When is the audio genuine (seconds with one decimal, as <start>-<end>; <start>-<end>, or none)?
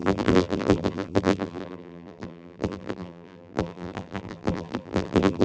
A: none